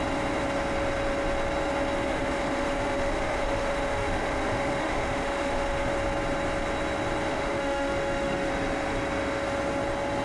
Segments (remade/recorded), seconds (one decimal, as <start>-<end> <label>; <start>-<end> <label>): 0.0-2.1 recorded; 2.1-5.9 remade; 5.9-7.3 recorded; 7.3-8.5 remade; 8.5-10.2 recorded